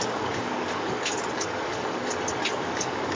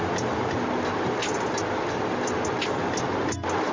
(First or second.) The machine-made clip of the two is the first